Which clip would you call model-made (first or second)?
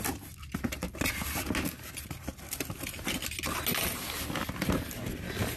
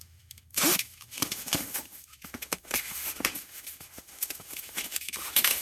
second